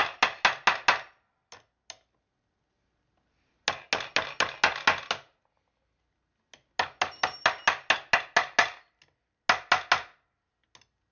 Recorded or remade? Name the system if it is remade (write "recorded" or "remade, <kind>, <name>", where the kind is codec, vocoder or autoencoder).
recorded